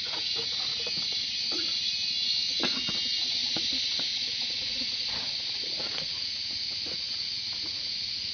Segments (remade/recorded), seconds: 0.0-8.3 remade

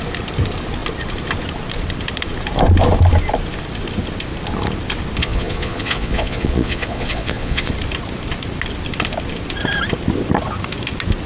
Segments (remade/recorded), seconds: 0.0-5.2 recorded; 5.2-7.7 remade; 7.7-11.3 recorded

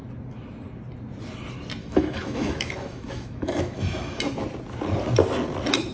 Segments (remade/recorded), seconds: 0.0-1.8 recorded; 1.8-4.2 remade; 4.2-5.9 recorded

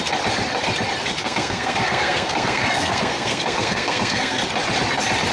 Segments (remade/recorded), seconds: 0.0-1.2 recorded; 1.2-4.4 remade; 4.4-5.3 recorded

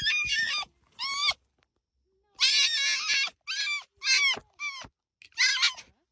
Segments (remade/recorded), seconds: 0.0-6.1 recorded

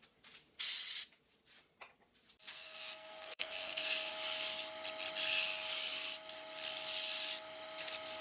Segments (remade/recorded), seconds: 0.0-2.5 recorded; 2.5-4.1 remade; 4.1-8.2 recorded

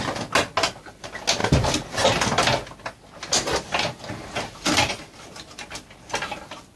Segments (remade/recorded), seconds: 0.0-6.8 recorded